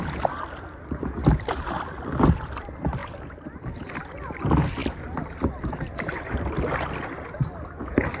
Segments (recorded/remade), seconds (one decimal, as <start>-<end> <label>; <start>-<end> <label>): 0.0-8.2 recorded